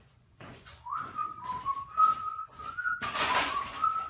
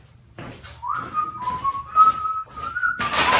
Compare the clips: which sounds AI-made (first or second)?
first